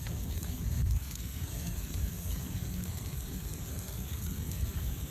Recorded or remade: remade